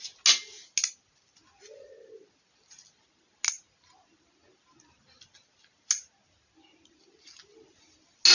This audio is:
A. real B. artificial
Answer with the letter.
A